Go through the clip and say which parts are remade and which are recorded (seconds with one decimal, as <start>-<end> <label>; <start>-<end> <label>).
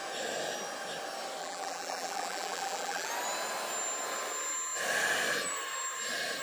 0.0-1.4 recorded; 1.4-3.1 remade; 3.1-6.4 recorded